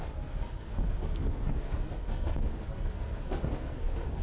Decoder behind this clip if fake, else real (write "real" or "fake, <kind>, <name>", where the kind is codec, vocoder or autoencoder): fake, codec, SNAC